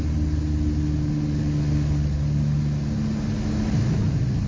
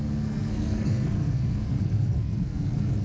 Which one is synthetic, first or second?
second